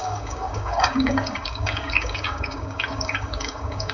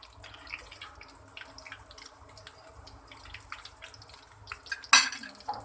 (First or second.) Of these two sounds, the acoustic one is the second